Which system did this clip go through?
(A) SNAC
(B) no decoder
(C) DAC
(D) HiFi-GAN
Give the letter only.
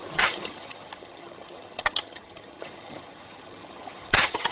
D